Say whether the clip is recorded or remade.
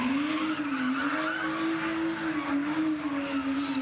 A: recorded